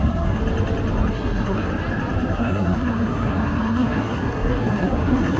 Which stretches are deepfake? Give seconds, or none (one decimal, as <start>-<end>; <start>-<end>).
0.0-0.4; 1.1-1.7; 2.3-5.4